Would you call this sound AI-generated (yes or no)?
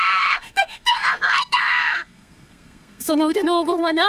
yes